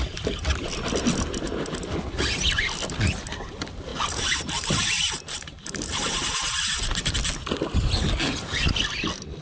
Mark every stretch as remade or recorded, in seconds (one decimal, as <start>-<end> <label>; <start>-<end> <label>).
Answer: 0.0-3.9 recorded; 3.9-6.9 remade; 6.9-9.4 recorded